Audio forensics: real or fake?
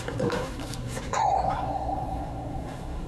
fake